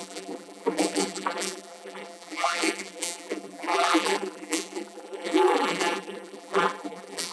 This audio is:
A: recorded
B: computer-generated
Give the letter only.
B